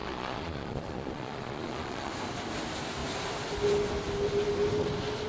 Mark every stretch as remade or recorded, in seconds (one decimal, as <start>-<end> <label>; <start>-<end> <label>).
0.0-2.1 remade; 2.1-5.3 recorded